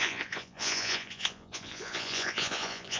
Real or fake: fake